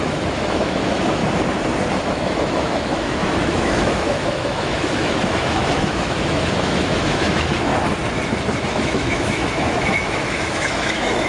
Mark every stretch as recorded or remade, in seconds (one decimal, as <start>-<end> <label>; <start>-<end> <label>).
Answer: 0.0-1.2 remade; 1.2-1.9 recorded; 1.9-7.7 remade; 7.7-8.7 recorded; 8.7-11.3 remade